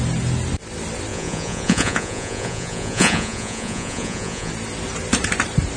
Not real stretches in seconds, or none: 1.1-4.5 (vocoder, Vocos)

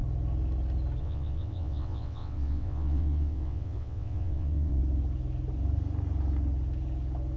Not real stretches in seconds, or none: 1.0-4.8 (vocoder, WaveNeXt)

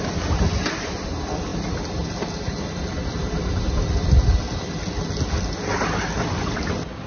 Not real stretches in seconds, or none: none

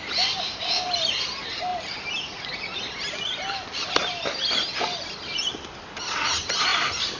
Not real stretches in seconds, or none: none

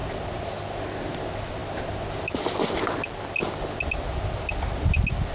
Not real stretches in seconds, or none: none

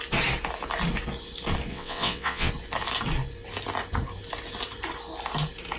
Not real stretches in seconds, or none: 1.7-2.5 (vocoder, WaveNeXt)

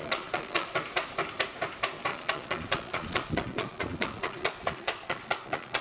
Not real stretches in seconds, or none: 0.0-0.7 (vocoder, Vocos); 2.1-5.8